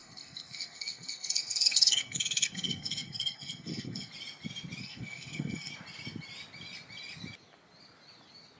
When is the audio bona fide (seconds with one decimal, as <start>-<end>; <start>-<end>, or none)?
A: 4.1-4.8; 5.7-8.6